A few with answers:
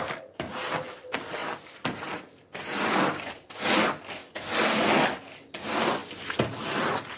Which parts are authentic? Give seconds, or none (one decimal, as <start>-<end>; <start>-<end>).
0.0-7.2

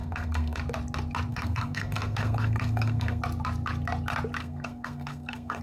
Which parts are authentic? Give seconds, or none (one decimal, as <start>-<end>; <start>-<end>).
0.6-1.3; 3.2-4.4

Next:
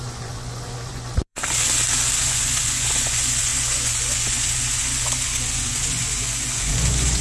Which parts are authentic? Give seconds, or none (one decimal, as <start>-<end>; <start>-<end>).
1.4-2.2

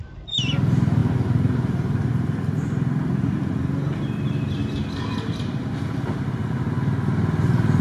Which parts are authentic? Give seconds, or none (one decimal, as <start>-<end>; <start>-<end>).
0.0-7.8

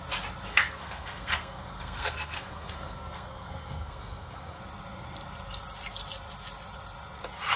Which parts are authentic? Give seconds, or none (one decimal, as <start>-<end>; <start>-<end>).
0.0-0.5; 4.6-7.6

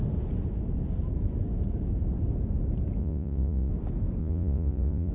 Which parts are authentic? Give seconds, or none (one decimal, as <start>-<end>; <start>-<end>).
0.0-3.0; 3.7-4.2